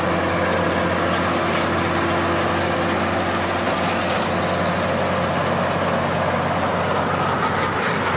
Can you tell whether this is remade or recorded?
recorded